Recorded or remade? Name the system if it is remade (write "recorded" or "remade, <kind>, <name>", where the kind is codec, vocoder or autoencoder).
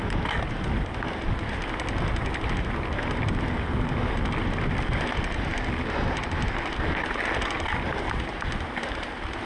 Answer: recorded